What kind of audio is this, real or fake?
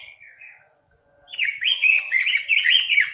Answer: fake